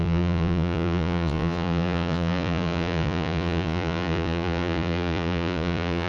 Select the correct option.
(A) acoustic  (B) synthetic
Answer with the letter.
B